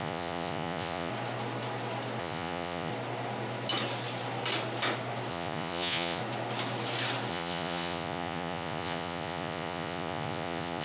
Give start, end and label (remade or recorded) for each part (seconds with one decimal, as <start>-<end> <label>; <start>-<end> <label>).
0.0-1.1 remade; 1.1-2.2 recorded; 2.2-2.9 remade; 2.9-5.3 recorded; 5.3-6.2 remade; 6.2-7.3 recorded; 7.3-10.8 remade

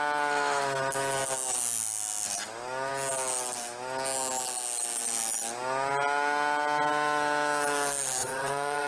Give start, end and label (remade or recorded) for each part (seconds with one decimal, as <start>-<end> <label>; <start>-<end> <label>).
0.0-8.2 recorded; 8.2-8.9 remade

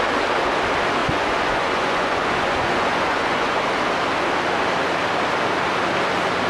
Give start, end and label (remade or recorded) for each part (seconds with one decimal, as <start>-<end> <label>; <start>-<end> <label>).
0.0-1.0 recorded; 1.0-3.6 remade; 3.6-6.5 recorded

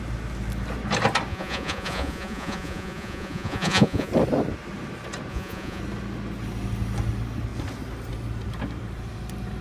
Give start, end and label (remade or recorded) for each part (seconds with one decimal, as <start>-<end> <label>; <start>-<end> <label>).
0.0-1.3 recorded; 1.3-4.1 remade; 4.1-5.3 recorded; 5.3-5.8 remade; 5.8-9.6 recorded